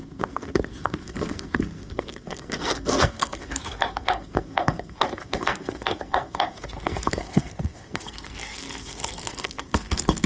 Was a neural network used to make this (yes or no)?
yes